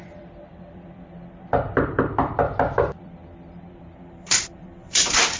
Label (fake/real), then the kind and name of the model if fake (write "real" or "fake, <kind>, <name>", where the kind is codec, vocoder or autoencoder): fake, vocoder, BigVGAN v2